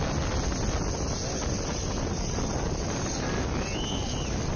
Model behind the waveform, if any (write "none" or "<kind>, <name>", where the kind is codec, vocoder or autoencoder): none